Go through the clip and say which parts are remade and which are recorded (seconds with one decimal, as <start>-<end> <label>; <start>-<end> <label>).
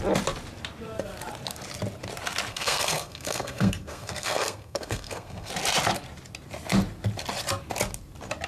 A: 0.0-2.5 recorded; 2.5-5.5 remade; 5.5-8.5 recorded